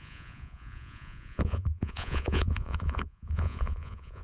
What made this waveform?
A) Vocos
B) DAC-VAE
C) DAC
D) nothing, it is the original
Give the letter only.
A